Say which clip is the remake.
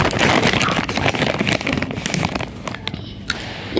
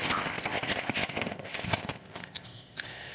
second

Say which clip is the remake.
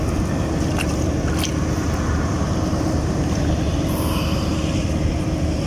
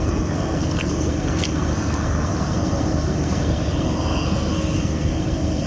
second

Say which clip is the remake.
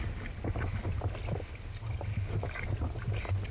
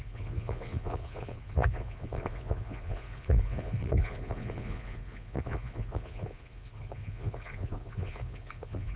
second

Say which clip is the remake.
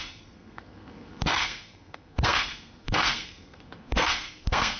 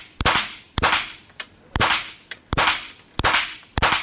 first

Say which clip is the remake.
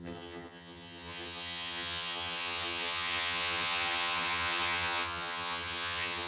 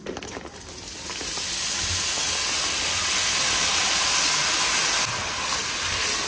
first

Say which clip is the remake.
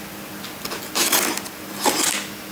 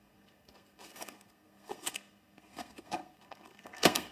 second